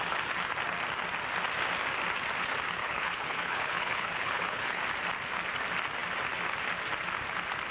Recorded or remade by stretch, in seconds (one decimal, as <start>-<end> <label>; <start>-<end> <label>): 0.0-2.8 recorded; 2.8-4.8 remade; 4.8-7.7 recorded